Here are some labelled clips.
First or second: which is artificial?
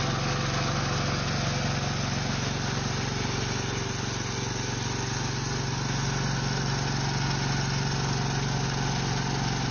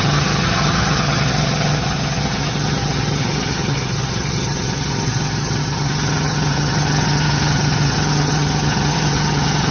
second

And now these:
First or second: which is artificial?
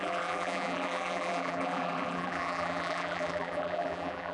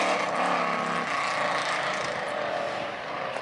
first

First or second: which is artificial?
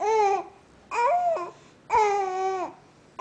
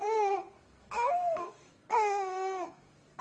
second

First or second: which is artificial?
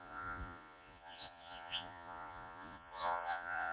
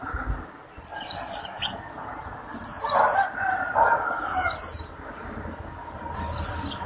first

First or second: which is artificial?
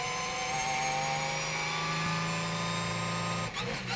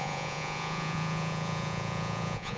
second